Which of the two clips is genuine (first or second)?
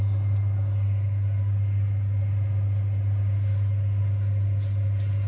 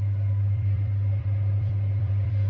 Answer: first